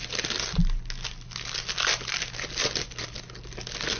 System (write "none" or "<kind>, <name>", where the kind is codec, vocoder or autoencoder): none